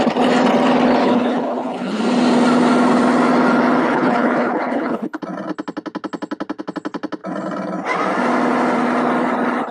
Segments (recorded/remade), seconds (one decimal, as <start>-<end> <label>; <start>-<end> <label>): 0.0-1.0 recorded; 1.0-2.0 remade; 2.0-3.8 recorded; 3.8-5.2 remade; 5.2-9.7 recorded